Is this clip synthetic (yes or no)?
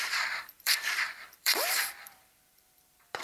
yes